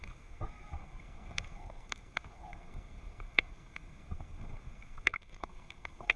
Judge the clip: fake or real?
fake